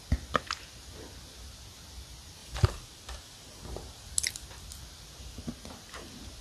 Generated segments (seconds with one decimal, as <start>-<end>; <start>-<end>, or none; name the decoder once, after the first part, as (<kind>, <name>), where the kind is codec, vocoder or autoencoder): 2.4-4.3 (vocoder, BigVGAN v2)